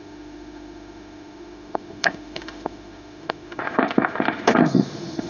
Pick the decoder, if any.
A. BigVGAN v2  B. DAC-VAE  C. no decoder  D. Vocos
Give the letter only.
B